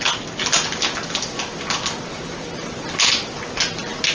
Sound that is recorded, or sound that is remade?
recorded